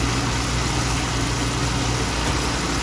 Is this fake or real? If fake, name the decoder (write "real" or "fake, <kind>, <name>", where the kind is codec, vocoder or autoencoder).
real